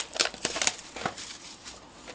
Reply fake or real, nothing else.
fake